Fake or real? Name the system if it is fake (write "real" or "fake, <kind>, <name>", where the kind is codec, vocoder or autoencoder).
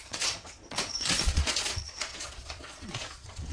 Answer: fake, vocoder, Vocos